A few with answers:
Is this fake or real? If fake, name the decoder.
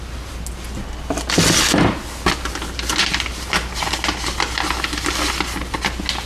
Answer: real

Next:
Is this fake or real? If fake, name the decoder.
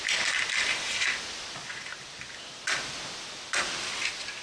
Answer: real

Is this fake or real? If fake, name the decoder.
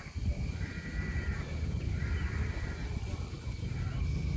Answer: real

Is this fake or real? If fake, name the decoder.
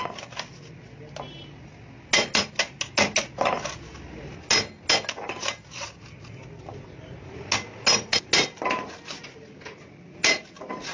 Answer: real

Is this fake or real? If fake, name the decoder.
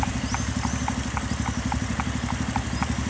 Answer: real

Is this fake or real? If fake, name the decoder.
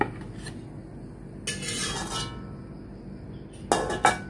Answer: real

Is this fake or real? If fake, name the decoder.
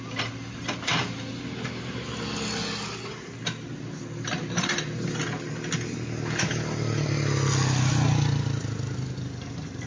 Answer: real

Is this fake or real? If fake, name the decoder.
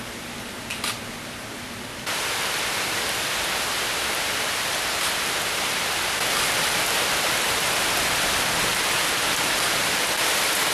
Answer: fake, vocoder, BigVGAN v2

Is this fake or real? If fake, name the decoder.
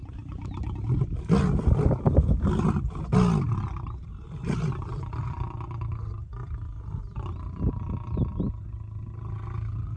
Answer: real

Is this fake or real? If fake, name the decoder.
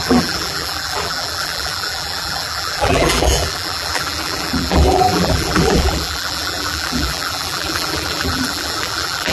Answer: fake, vocoder, BigVGAN v2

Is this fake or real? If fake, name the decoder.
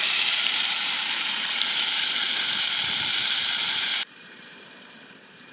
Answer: fake, vocoder, BigVGAN v2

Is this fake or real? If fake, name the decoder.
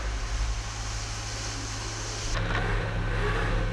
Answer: real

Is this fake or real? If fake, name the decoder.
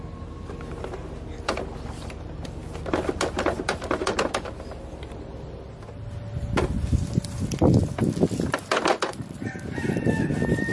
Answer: fake, vocoder, BigVGAN v2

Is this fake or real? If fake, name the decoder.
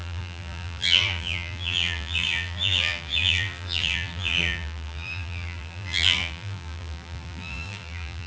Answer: fake, vocoder, BigVGAN v2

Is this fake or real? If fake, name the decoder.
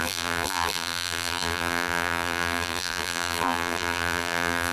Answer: fake, vocoder, BigVGAN v2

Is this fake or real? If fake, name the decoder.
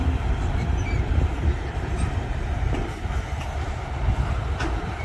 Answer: fake, vocoder, BigVGAN v2